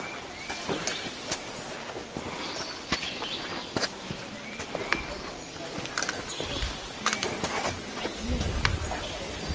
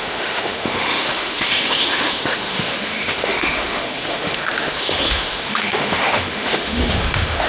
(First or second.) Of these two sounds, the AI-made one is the second